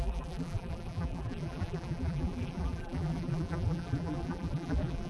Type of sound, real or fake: fake